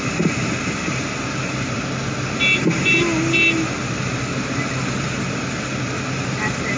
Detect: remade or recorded recorded